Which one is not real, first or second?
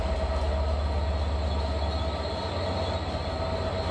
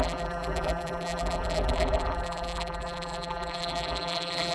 second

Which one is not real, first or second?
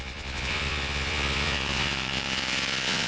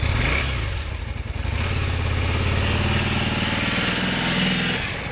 first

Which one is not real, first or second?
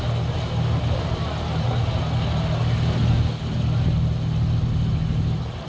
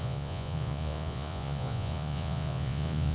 second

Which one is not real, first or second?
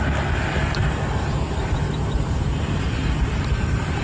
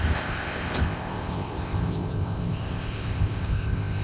second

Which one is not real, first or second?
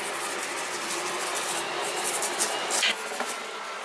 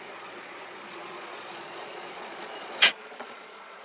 second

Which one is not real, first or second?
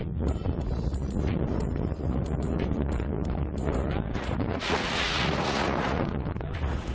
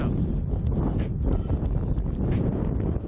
first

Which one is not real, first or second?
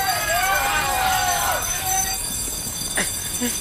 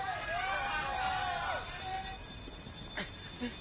first